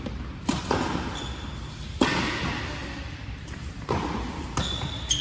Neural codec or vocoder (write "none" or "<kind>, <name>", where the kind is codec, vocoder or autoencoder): none